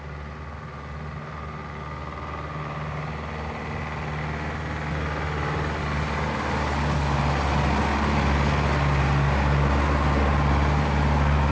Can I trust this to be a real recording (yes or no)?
yes